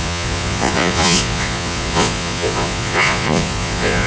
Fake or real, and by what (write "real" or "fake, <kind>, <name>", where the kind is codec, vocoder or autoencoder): fake, vocoder, Vocos